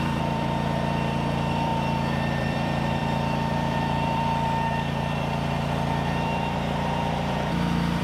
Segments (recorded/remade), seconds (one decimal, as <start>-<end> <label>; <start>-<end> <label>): 0.0-1.7 remade; 1.7-2.4 recorded; 2.4-3.0 remade; 3.0-3.5 recorded; 3.5-8.0 remade